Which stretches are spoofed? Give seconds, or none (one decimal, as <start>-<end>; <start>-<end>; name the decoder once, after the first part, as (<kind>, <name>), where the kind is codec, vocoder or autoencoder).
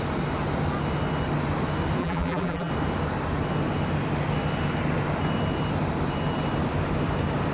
2.0-2.7 (vocoder, BigVGAN v2)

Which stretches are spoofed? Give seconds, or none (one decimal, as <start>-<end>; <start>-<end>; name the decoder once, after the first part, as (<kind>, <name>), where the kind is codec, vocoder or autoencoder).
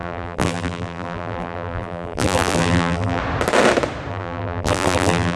0.0-3.2 (vocoder, BigVGAN v2); 4.1-5.4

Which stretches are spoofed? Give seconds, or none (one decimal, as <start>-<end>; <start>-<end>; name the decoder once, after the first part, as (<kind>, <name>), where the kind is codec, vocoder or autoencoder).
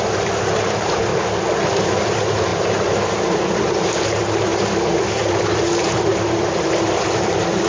0.0-1.1 (vocoder, BigVGAN v2); 1.7-7.7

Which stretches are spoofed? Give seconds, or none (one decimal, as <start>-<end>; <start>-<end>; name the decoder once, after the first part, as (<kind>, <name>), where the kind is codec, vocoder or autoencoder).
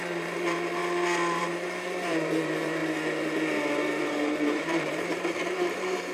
0.0-0.8 (vocoder, BigVGAN v2); 1.4-2.8; 4.0-6.1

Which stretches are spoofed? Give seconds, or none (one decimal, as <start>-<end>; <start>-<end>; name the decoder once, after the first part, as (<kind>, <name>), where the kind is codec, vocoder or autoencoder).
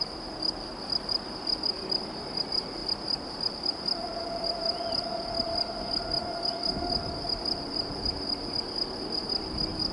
2.8-5.7 (vocoder, BigVGAN v2)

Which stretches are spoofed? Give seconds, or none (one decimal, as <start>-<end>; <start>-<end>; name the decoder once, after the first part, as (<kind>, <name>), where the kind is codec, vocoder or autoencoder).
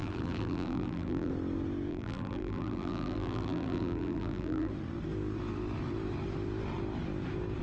0.0-1.3 (vocoder, BigVGAN v2); 1.9-4.7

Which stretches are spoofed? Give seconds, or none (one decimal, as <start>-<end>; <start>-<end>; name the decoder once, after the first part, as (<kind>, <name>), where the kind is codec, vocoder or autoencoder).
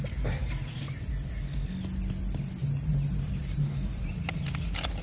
0.4-1.1 (vocoder, BigVGAN v2); 2.6-4.3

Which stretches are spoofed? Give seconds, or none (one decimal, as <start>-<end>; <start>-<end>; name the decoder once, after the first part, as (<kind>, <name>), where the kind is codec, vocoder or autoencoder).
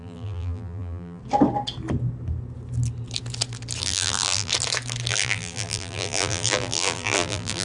0.0-1.2 (vocoder, BigVGAN v2); 3.8-4.5; 5.1-7.6